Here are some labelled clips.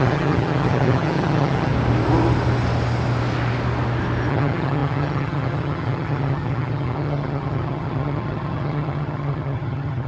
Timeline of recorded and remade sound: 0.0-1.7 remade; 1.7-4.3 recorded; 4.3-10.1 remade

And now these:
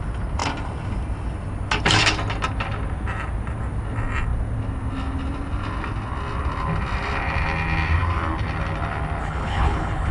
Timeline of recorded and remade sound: 0.0-9.2 recorded; 9.2-10.1 remade

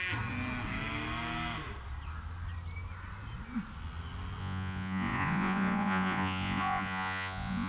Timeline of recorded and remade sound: 0.0-4.4 recorded; 4.4-7.7 remade